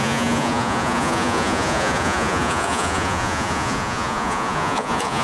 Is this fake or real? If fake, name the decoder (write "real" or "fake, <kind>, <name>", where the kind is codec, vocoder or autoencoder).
fake, vocoder, Vocos